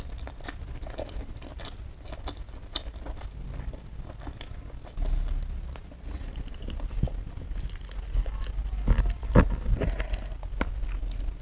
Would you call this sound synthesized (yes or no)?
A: no